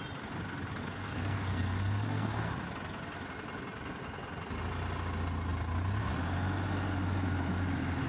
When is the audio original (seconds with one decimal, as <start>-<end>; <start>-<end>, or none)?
0.0-0.8; 2.5-8.1

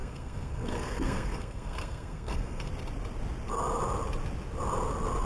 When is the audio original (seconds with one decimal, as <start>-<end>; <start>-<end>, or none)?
2.7-5.3

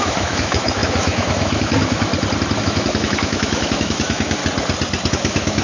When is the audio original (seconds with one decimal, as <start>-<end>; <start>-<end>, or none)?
2.1-2.6; 4.4-5.1

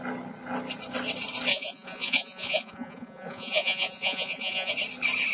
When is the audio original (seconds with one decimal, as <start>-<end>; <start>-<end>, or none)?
0.0-1.5; 4.7-5.3

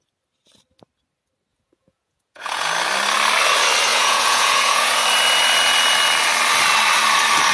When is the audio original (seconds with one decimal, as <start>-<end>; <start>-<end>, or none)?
0.0-1.5; 2.7-3.9; 4.9-7.5

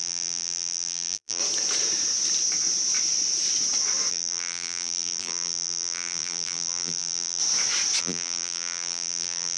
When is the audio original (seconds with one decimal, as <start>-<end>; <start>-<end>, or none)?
1.4-4.1; 7.4-8.0

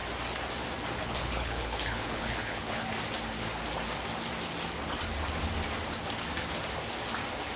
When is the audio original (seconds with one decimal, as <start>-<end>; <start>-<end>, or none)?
0.0-1.0; 2.8-7.6